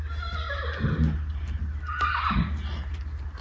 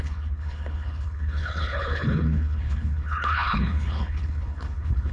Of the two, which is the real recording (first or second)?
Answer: first